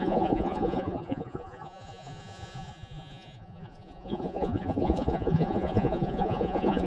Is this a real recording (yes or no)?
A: no